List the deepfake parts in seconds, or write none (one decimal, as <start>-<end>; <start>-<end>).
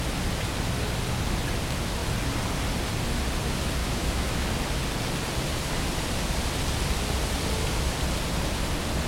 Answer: 3.8-4.5